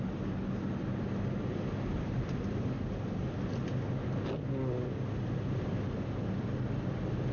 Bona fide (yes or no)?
yes